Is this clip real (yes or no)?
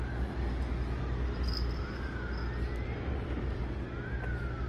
yes